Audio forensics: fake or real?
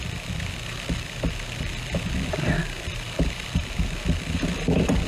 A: fake